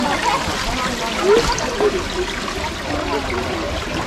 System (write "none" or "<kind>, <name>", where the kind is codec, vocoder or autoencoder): none